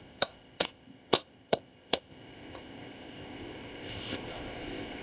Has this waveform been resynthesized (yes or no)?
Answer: yes